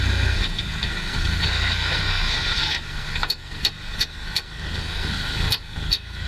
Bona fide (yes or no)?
no